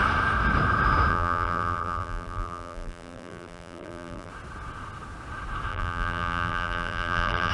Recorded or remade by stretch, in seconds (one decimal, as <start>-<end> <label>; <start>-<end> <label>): 0.0-1.1 recorded; 1.1-4.3 remade; 4.3-5.7 recorded; 5.7-7.5 remade